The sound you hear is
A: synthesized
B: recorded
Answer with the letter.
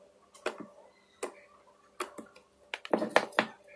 B